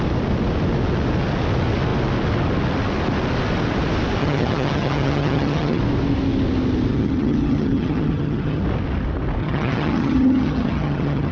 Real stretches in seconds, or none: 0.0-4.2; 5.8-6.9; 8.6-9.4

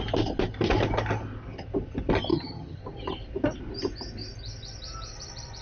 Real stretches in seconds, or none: 0.0-2.3; 2.8-5.6

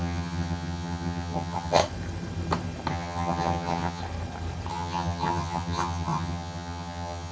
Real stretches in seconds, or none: 1.8-2.9; 4.0-4.7